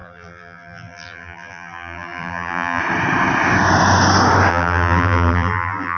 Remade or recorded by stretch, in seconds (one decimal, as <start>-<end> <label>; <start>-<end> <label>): 0.0-2.8 remade; 2.8-4.5 recorded; 4.5-6.0 remade